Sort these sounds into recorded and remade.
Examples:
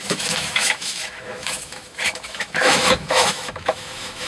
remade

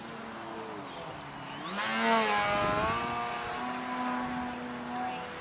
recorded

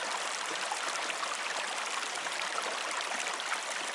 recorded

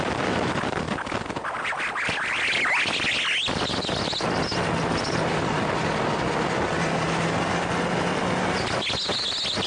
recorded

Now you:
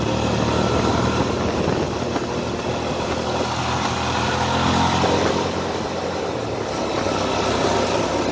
recorded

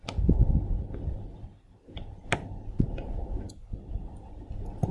recorded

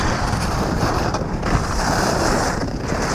remade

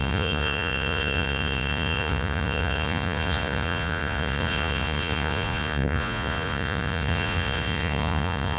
remade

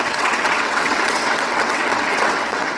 remade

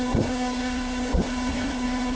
remade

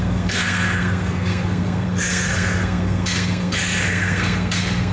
remade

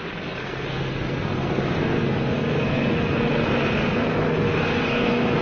remade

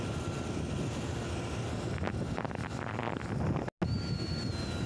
recorded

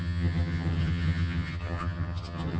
remade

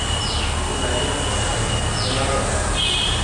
recorded